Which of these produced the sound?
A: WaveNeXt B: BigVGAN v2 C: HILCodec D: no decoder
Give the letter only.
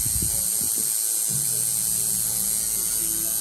D